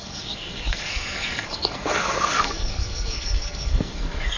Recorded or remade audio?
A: remade